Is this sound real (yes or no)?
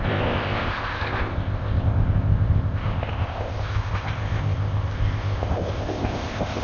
no